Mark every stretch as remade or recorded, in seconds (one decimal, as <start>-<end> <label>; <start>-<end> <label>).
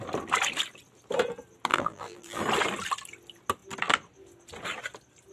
0.0-1.7 recorded; 1.7-2.4 remade; 2.4-5.3 recorded